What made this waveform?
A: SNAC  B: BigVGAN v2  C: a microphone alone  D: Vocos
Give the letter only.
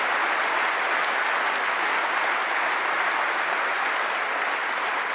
C